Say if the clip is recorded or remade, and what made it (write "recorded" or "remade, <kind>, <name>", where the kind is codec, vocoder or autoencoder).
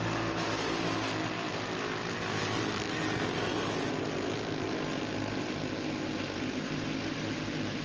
recorded